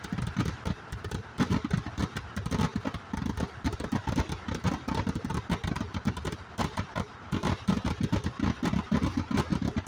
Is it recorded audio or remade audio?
recorded